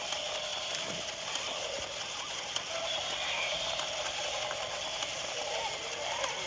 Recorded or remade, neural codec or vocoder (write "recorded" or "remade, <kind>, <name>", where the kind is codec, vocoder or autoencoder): recorded